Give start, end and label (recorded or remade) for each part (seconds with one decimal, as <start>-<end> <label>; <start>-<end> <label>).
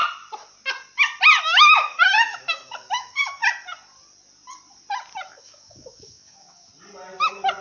0.0-1.4 recorded; 1.4-3.4 remade; 3.4-5.4 recorded; 5.4-6.7 remade; 6.7-7.6 recorded